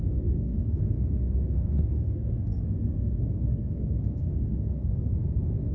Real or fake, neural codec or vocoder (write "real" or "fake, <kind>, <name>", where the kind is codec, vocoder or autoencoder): fake, codec, SNAC